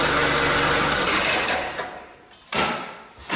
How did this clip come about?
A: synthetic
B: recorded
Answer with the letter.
B